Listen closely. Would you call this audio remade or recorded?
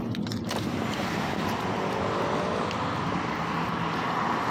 recorded